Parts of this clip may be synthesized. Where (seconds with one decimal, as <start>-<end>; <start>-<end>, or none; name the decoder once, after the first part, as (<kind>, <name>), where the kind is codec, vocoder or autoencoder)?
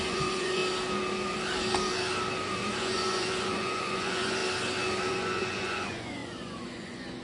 0.0-0.6 (vocoder, Vocos); 2.8-4.4; 5.1-7.2